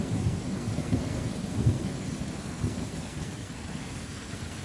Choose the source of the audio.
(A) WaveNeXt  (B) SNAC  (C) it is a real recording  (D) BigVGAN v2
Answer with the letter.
B